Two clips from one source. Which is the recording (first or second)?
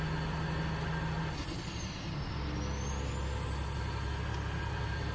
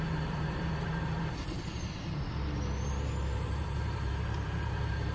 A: first